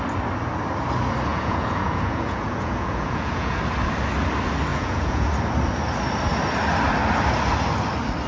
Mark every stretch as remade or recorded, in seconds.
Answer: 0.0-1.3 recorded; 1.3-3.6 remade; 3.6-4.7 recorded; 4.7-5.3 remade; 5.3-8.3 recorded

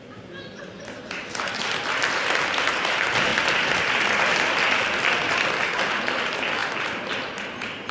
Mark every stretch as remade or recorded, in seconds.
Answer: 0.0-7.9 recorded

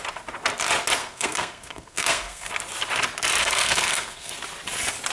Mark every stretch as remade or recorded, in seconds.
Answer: 0.0-1.0 recorded; 1.0-2.5 remade; 2.5-3.4 recorded; 3.4-4.3 remade; 4.3-5.1 recorded

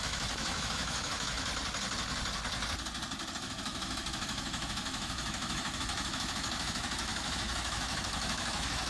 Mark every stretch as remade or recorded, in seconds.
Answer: 0.0-1.5 remade; 1.5-3.4 recorded; 3.4-8.9 remade

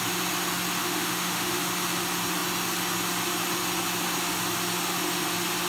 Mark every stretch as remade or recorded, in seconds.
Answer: 0.0-0.8 recorded; 0.8-1.6 remade; 1.6-5.7 recorded